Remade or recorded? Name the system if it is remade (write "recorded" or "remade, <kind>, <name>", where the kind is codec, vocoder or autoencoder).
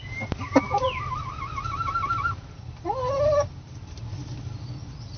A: recorded